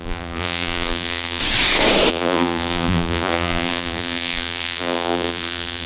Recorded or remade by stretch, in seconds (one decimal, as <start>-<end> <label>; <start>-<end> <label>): 0.0-1.4 remade; 1.4-2.1 recorded; 2.1-5.9 remade